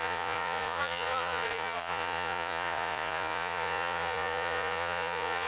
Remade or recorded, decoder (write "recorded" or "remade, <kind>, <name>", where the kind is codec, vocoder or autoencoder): remade, vocoder, Vocos